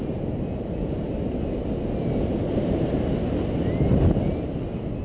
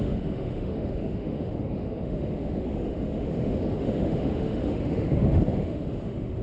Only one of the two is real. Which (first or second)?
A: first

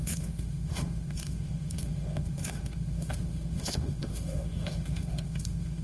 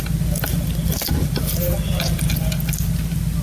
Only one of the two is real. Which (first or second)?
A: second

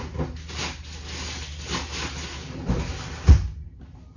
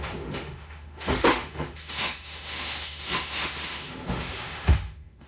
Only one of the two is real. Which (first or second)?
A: first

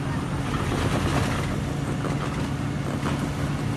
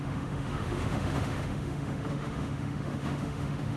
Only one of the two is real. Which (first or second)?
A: first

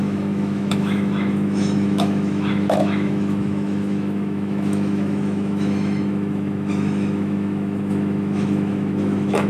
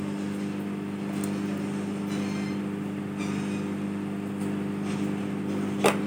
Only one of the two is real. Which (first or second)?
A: second